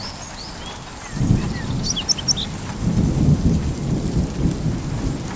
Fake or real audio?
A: real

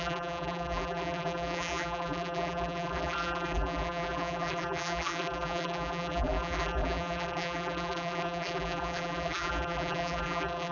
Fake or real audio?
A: fake